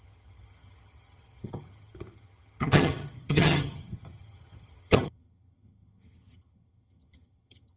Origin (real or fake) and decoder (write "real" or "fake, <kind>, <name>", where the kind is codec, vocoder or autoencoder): fake, vocoder, HiFi-GAN